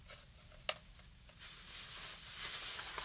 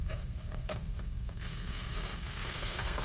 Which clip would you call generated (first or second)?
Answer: second